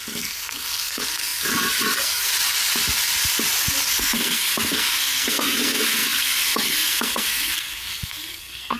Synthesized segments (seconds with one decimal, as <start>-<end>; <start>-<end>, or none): 0.0-2.3; 3.9-8.8